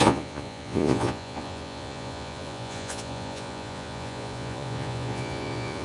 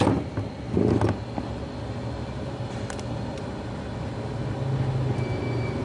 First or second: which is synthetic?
first